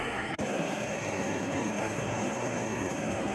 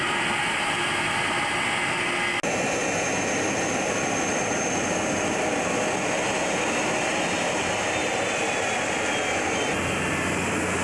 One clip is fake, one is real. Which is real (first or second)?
second